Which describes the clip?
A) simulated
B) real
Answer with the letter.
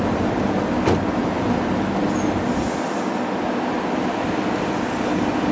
B